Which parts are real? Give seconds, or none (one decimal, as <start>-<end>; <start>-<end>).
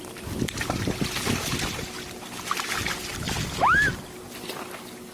0.0-5.1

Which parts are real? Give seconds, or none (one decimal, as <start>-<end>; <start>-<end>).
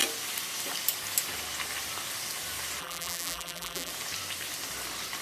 0.0-2.8; 3.9-5.2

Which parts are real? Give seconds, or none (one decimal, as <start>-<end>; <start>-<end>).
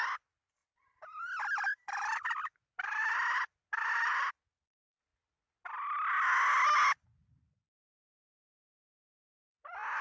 0.0-0.6; 4.3-10.0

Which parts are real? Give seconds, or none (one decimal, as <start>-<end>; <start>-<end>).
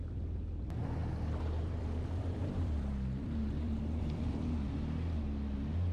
0.0-1.0; 4.5-5.9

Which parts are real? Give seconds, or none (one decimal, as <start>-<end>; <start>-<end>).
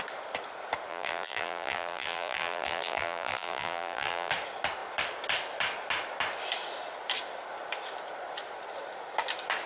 0.0-0.9; 4.3-9.7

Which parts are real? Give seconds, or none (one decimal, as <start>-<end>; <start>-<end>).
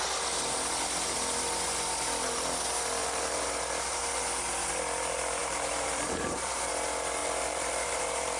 0.0-3.0; 4.1-5.4; 6.7-7.2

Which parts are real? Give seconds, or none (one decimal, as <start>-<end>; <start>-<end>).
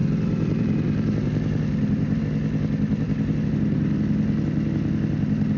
2.2-5.6